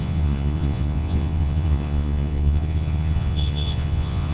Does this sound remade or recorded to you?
remade